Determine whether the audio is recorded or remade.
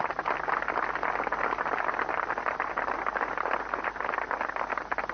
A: recorded